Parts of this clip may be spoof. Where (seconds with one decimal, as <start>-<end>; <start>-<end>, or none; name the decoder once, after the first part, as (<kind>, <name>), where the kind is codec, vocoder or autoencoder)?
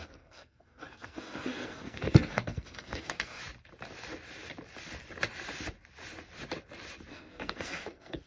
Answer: 0.0-3.4 (codec, SNAC); 7.1-8.3